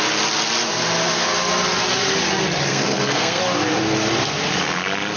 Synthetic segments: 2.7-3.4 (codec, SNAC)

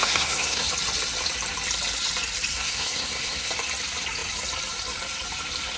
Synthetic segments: 0.0-0.7 (codec, SNAC); 2.5-3.5

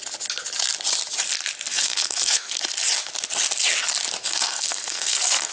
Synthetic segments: 1.7-2.6 (codec, SNAC); 4.2-5.5